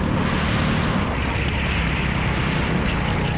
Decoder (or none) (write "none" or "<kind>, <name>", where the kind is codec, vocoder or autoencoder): none